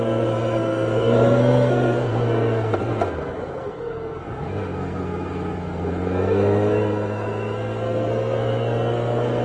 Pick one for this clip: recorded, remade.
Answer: remade